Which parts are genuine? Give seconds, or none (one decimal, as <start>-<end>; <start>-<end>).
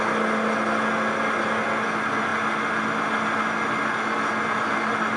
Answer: 0.0-5.2